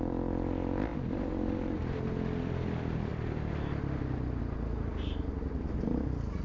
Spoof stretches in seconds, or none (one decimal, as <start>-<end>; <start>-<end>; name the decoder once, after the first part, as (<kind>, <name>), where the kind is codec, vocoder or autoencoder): none